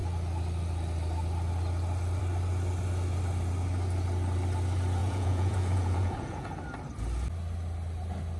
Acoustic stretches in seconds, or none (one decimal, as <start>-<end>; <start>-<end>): 0.0-5.0; 6.5-8.4